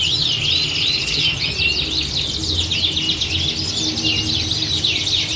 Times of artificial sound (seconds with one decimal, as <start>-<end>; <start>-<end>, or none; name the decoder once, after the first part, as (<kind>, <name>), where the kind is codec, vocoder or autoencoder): 1.0-1.5 (vocoder, HiFi-GAN)